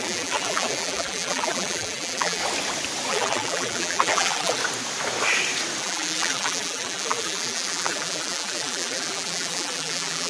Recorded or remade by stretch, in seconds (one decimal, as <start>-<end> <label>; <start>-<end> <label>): 0.0-2.4 remade; 2.4-3.1 recorded; 3.1-4.6 remade; 4.6-5.8 recorded; 5.8-10.3 remade